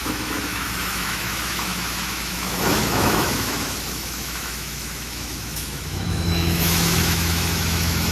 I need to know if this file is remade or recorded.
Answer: remade